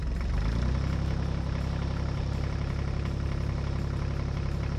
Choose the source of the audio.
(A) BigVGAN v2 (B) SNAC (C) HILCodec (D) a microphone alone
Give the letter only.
D